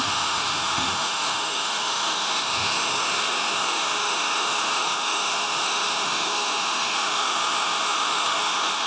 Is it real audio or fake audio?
fake